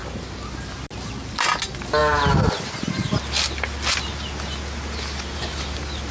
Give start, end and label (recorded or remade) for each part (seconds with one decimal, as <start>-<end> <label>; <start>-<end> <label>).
0.0-6.1 recorded